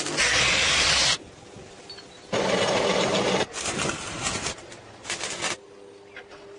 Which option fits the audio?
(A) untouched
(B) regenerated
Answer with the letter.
A